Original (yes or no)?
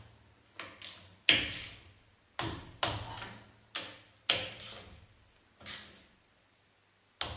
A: yes